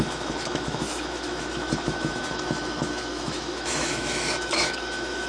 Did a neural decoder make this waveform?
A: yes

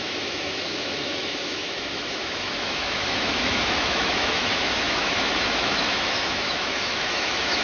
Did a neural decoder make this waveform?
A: yes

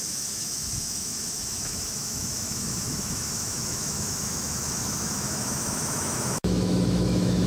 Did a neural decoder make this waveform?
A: yes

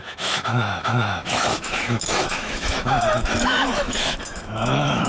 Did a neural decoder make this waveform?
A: yes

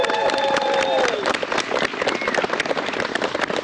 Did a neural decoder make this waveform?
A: no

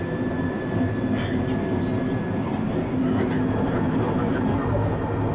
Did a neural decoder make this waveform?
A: no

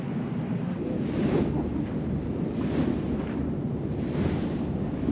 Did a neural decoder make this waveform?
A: no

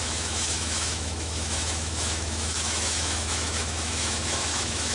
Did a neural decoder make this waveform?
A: yes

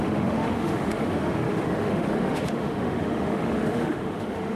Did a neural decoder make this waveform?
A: yes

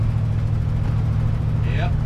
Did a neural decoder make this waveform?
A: no